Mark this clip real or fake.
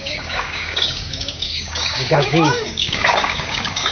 fake